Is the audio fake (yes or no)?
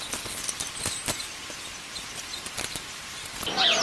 no